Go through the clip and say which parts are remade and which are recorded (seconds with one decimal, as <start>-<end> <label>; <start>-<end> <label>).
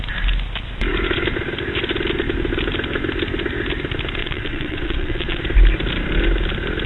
0.0-4.2 recorded; 4.2-5.4 remade; 5.4-6.9 recorded